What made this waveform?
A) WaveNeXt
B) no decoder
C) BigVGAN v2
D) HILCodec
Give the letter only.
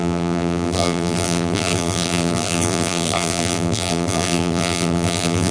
C